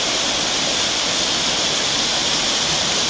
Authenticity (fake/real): real